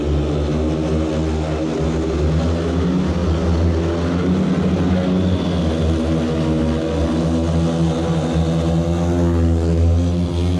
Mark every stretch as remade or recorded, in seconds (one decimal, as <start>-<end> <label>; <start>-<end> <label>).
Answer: 0.0-10.6 recorded